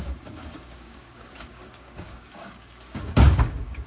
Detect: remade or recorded remade